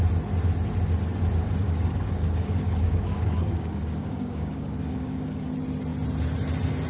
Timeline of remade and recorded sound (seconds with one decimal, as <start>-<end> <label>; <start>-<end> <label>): 0.0-1.6 recorded; 1.6-5.5 remade; 5.5-6.9 recorded